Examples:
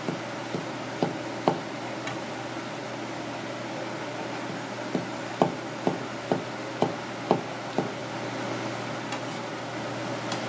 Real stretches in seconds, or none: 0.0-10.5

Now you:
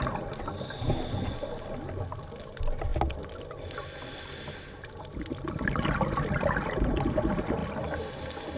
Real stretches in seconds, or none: 0.0-8.6